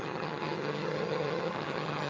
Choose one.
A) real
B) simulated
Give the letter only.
B